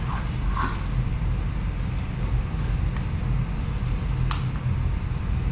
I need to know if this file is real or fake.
real